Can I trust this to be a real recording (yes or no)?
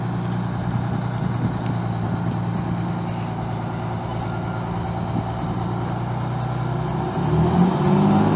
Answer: yes